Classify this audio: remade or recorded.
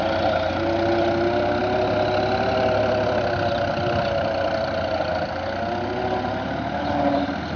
recorded